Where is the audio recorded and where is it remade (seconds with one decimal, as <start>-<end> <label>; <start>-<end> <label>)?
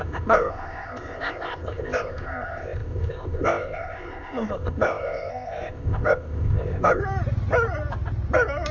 0.0-7.0 remade; 7.0-8.7 recorded